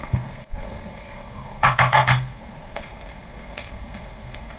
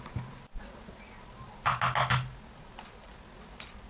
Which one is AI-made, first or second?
first